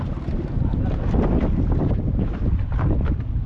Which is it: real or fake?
real